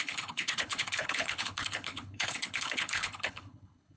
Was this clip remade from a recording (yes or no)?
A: yes